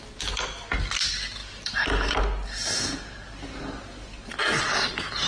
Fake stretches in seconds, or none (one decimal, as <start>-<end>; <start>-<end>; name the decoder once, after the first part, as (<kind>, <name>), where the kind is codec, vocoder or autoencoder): none